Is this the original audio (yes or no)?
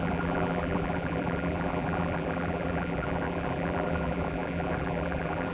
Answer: no